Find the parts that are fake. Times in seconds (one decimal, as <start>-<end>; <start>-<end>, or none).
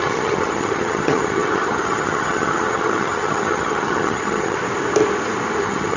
0.0-4.6; 5.6-6.0